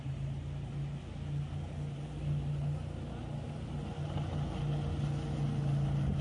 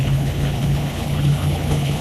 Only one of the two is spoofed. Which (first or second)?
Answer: second